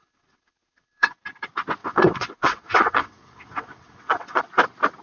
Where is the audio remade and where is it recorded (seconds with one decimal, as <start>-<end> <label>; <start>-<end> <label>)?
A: 0.0-1.2 remade; 1.2-1.8 recorded; 1.8-4.4 remade; 4.4-5.0 recorded